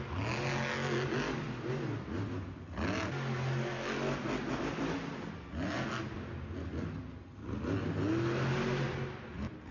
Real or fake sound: real